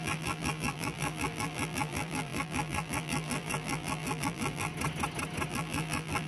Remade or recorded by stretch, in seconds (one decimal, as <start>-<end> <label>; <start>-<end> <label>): 0.0-4.7 remade; 4.7-5.5 recorded; 5.5-6.3 remade